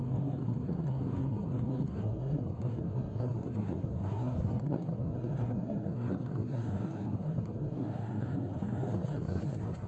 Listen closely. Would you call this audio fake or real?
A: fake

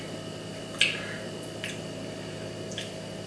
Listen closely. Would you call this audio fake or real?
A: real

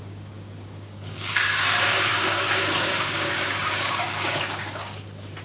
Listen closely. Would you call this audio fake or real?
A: fake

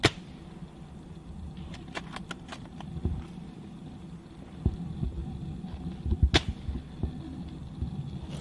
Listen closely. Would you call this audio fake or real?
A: real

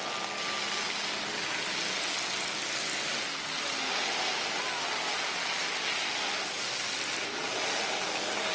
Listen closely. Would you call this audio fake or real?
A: real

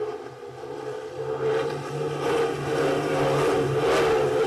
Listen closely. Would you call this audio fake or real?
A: real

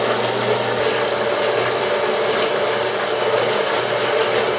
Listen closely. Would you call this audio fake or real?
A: real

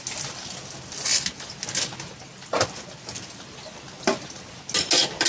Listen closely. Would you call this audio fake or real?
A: real